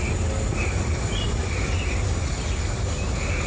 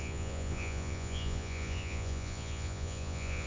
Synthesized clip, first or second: second